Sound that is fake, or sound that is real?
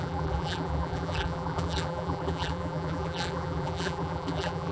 fake